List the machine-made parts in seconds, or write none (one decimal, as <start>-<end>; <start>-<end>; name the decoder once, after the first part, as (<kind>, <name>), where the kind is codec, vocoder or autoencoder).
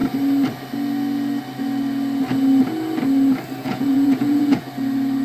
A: 3.6-4.6 (vocoder, Vocos)